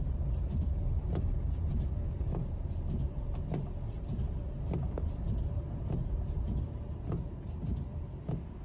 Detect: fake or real real